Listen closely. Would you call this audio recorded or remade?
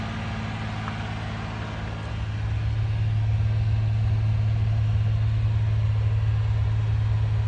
recorded